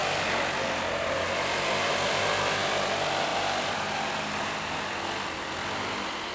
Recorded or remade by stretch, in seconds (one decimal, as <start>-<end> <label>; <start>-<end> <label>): 0.0-3.3 recorded; 3.3-4.4 remade; 4.4-6.3 recorded